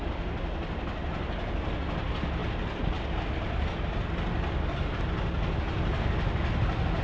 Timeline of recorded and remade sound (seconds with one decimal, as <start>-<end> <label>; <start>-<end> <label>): 0.0-7.0 recorded